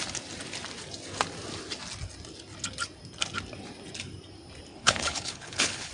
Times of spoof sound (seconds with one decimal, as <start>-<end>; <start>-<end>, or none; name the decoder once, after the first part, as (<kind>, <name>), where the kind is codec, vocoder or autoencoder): 4.7-5.9 (codec, HILCodec)